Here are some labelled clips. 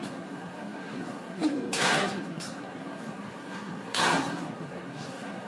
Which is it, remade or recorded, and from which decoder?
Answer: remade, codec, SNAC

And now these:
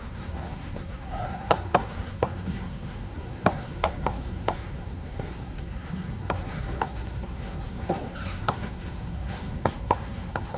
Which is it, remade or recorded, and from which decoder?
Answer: remade, codec, SNAC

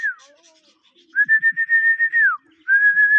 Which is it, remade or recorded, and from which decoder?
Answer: recorded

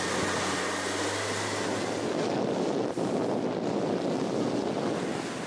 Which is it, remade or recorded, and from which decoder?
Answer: recorded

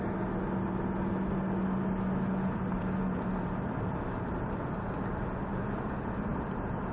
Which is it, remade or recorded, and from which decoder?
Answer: recorded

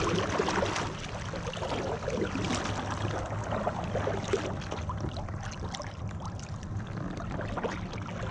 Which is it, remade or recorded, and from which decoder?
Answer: recorded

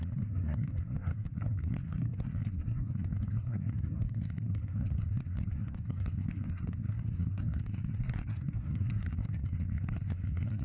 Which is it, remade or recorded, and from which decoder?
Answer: remade, codec, SNAC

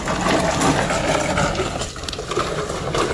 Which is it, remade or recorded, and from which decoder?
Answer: recorded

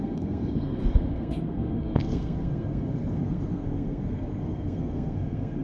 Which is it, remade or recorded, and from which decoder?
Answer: remade, codec, SNAC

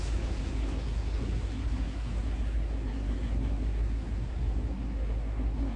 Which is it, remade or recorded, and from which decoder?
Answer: remade, codec, SNAC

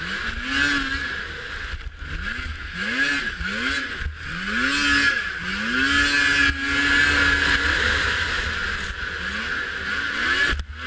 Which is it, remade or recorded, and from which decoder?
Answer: recorded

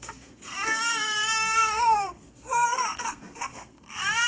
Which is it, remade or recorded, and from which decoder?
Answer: remade, codec, SNAC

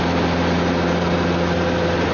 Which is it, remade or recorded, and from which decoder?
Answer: recorded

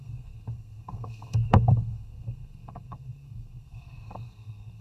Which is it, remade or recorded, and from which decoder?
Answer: remade, codec, SNAC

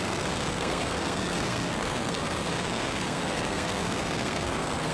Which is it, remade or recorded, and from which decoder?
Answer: remade, codec, SNAC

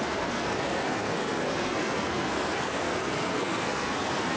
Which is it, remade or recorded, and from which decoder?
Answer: remade, codec, SNAC